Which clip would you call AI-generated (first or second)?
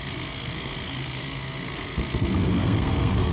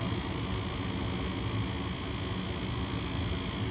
first